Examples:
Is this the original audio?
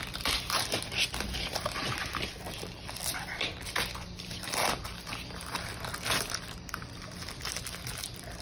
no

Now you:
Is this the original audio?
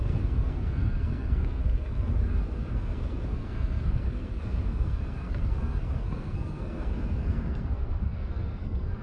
no